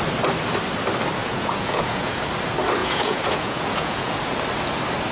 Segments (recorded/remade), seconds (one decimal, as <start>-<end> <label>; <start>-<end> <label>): 0.0-1.2 recorded; 1.2-2.2 remade; 2.2-2.8 recorded; 2.8-4.1 remade; 4.1-5.1 recorded